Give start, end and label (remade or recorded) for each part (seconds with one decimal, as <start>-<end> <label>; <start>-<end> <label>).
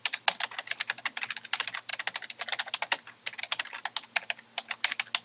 0.0-1.9 recorded; 1.9-3.4 remade; 3.4-5.2 recorded